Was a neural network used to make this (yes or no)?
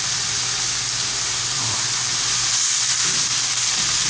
no